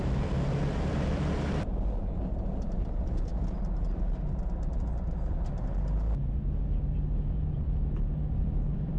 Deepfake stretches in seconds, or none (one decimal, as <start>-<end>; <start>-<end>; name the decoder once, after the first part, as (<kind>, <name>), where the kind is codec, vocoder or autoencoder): 0.0-1.7 (vocoder, BigVGAN v2); 2.5-3.3; 8.4-9.0